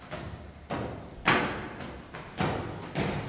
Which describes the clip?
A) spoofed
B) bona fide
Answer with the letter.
B